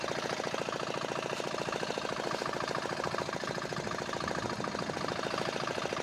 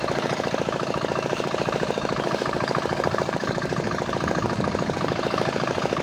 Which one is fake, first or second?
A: second